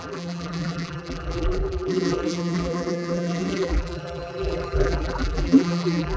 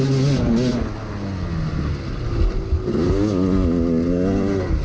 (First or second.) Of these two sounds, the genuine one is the second